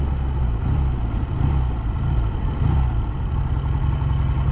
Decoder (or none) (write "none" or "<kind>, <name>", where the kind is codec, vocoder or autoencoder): none